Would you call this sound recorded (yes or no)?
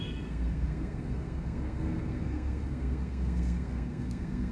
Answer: no